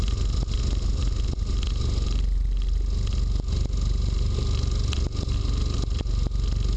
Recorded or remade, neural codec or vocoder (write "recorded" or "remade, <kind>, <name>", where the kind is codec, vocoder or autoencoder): recorded